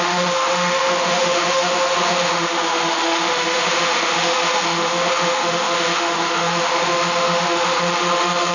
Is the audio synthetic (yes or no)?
yes